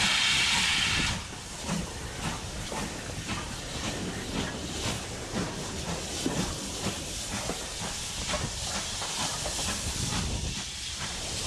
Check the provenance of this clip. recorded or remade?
recorded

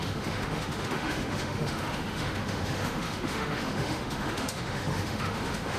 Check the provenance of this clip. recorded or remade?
remade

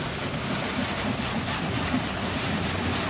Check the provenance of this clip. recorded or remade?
recorded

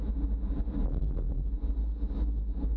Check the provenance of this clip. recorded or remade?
recorded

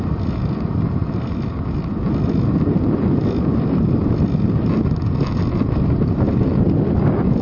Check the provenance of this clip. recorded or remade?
recorded